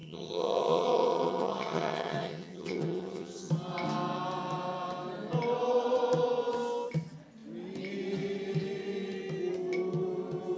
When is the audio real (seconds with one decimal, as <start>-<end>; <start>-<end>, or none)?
3.5-10.6